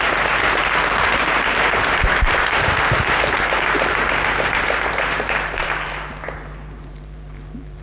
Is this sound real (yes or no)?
no